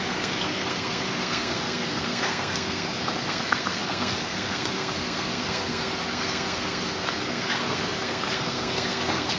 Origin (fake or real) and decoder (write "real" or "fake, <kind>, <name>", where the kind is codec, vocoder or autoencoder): fake, codec, SNAC